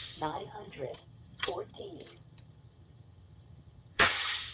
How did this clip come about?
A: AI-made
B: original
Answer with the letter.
A